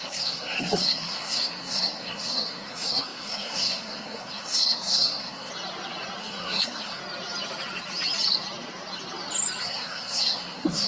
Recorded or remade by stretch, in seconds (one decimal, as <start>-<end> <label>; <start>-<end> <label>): 0.0-5.5 remade; 5.5-6.2 recorded; 6.2-7.0 remade; 7.0-9.6 recorded; 9.6-10.9 remade